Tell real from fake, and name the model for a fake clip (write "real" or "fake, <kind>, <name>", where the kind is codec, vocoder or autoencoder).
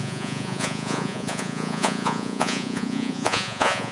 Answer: fake, vocoder, Vocos